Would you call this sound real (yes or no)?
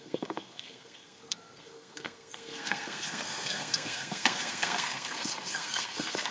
no